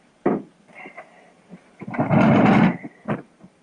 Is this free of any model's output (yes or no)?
no